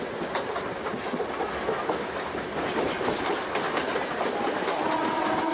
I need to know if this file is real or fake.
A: real